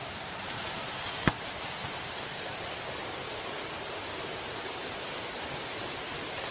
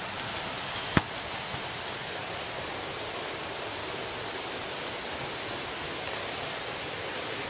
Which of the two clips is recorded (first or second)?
second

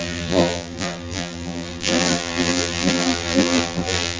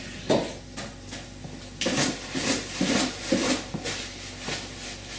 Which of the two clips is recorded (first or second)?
second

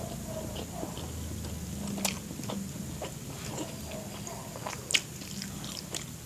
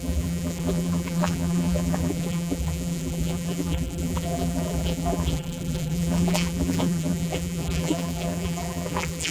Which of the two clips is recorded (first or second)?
first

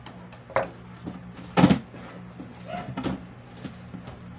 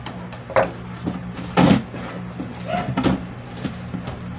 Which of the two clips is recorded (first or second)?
first